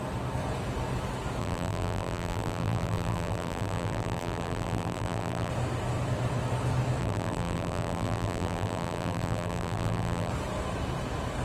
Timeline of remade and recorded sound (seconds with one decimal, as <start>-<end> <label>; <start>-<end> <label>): 0.0-1.4 recorded; 1.4-5.5 remade; 5.5-7.0 recorded; 7.0-10.3 remade; 10.3-11.4 recorded